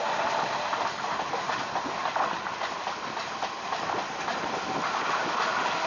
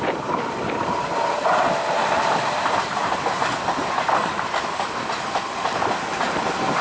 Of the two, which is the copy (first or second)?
second